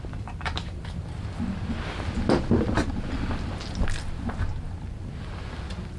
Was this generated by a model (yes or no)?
no